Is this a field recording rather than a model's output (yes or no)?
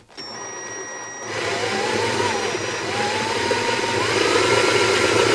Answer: yes